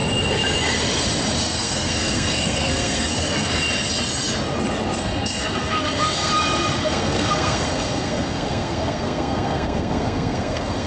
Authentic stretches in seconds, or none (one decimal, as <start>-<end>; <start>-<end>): 0.0-1.4; 3.5-5.0; 6.3-6.8